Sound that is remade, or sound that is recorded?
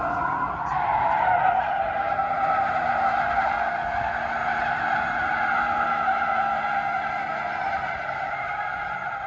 recorded